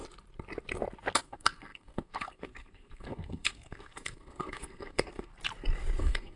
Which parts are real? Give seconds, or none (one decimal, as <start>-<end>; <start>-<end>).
0.0-1.2; 5.3-6.0